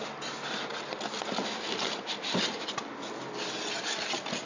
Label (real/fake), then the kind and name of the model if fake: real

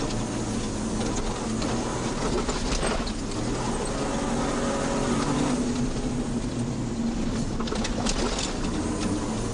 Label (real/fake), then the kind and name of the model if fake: real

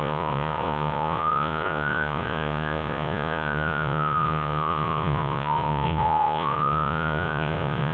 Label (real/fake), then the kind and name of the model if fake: fake, vocoder, Vocos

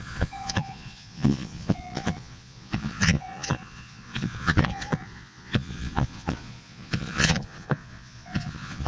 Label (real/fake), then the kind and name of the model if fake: fake, vocoder, Vocos